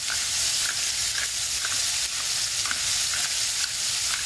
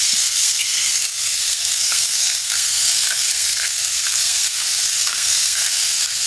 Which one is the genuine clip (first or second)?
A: first